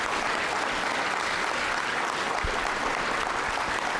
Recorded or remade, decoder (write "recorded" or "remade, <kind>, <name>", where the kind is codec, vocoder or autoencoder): recorded